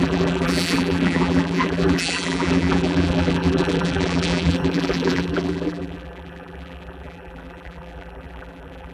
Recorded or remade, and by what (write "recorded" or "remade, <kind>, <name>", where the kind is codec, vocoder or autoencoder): remade, vocoder, BigVGAN v2